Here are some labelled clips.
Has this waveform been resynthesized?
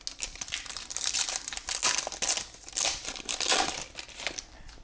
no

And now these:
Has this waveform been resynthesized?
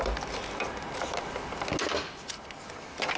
no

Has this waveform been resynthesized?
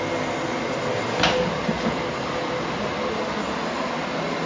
no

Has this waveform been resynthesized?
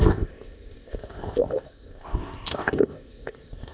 yes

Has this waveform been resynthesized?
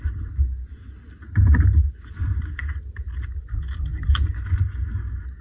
no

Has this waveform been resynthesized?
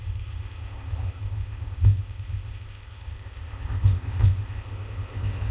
yes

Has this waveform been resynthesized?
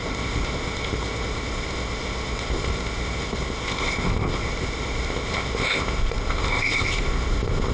yes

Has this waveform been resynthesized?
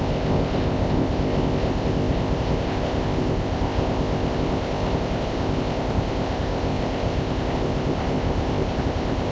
yes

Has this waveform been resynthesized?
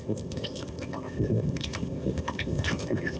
yes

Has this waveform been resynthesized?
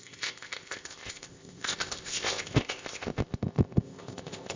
yes